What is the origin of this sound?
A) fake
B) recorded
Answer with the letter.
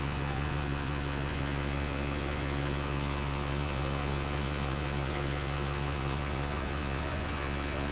A